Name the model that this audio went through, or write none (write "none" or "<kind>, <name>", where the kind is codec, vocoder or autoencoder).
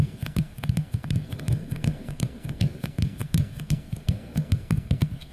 codec, SNAC